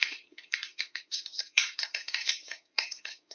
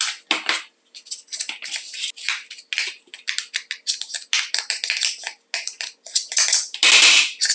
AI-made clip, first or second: first